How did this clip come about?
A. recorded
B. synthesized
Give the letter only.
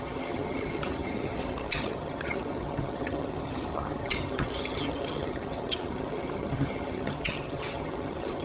B